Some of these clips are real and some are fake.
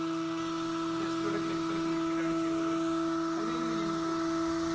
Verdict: real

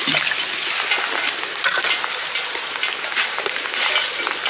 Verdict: real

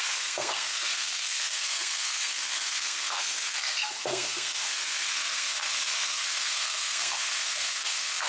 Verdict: fake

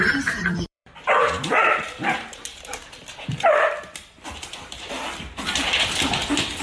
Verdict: fake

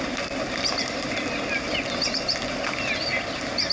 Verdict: real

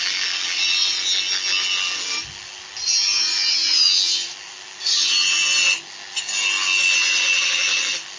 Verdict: real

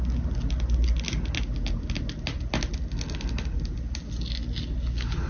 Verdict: real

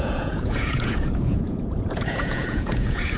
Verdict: fake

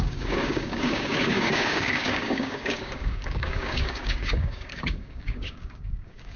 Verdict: fake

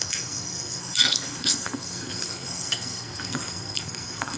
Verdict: fake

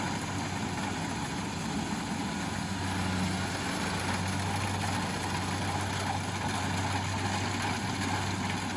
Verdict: real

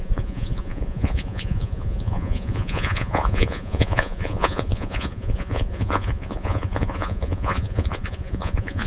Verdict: fake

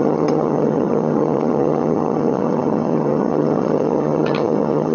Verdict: fake